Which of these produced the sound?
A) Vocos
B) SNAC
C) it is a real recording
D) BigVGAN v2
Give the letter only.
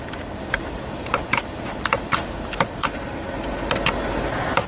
D